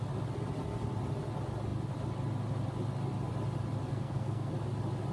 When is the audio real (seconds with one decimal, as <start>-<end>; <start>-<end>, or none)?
0.0-3.9; 4.5-5.1